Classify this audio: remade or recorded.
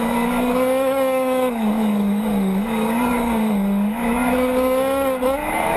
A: remade